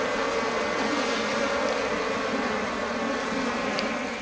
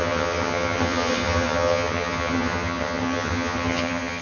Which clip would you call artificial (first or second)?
second